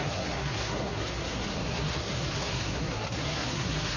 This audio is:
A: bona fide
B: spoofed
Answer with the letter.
B